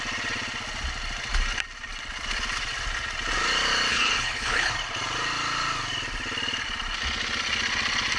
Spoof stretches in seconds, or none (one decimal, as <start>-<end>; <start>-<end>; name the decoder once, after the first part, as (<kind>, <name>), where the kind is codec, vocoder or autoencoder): 3.9-4.7 (codec, HILCodec)